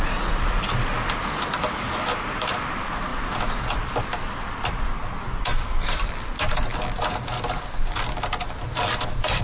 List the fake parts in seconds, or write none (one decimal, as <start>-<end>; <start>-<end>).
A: none